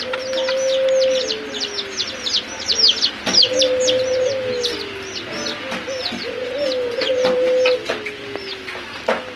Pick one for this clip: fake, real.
real